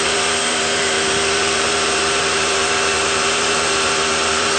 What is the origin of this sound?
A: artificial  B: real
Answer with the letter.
A